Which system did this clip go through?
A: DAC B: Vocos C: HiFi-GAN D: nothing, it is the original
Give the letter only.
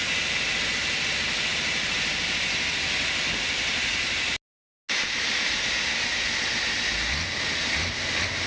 D